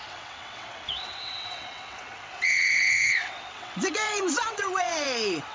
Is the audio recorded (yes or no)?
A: no